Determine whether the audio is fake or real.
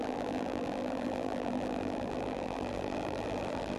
fake